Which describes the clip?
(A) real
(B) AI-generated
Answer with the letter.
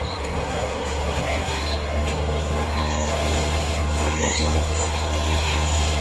B